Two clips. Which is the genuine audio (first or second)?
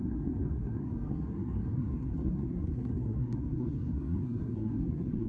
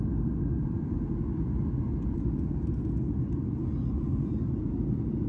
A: second